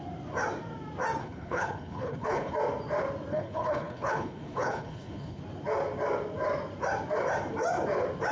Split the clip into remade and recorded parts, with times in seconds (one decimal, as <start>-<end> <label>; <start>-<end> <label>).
0.0-1.2 recorded; 1.2-2.5 remade; 2.5-3.3 recorded; 3.3-5.4 remade; 5.4-8.3 recorded